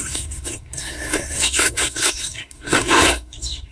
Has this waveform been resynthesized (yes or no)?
yes